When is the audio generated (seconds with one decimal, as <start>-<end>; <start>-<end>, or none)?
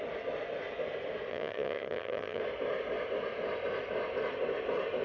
1.3-2.4